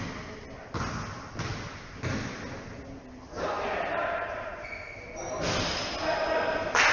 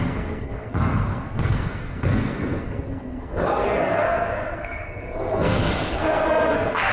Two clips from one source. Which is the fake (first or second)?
second